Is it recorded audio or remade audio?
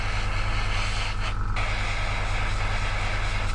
recorded